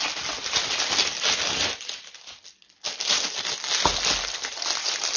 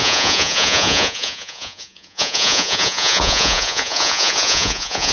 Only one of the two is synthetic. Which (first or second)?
second